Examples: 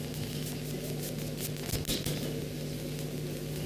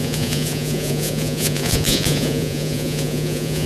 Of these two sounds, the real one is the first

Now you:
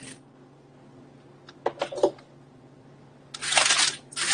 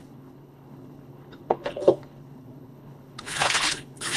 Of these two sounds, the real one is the first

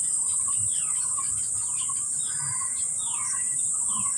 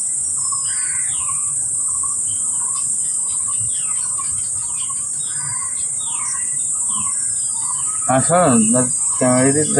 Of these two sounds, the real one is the second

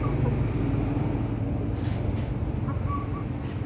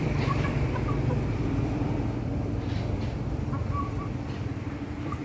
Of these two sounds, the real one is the first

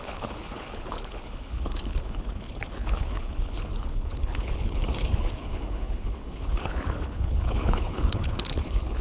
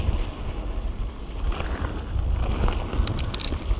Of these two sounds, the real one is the second